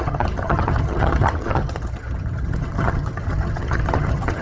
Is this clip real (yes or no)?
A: no